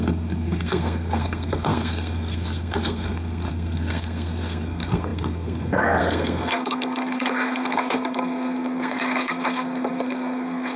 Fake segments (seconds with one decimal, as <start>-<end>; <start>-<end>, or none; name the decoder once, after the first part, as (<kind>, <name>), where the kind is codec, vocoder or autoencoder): 0.0-10.8 (codec, SNAC)